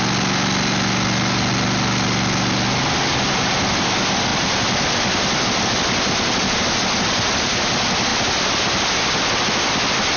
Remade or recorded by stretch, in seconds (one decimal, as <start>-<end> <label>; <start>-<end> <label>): 0.0-10.2 recorded